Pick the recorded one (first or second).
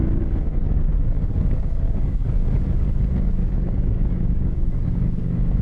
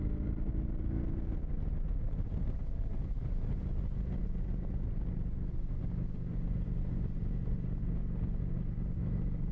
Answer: second